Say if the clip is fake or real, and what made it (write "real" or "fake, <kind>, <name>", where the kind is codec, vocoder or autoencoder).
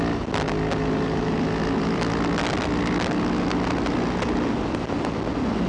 real